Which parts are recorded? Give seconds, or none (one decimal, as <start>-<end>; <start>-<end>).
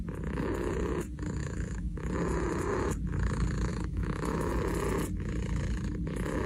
0.0-1.4; 2.1-3.7; 4.5-6.5